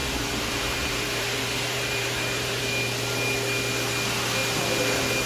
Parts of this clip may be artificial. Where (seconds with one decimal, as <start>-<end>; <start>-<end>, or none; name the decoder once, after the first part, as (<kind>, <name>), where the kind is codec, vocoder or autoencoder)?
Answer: 0.0-2.6 (vocoder, BigVGAN v2)